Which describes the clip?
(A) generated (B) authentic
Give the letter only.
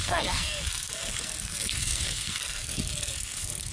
A